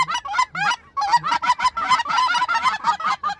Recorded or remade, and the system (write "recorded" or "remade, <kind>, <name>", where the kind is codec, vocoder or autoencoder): recorded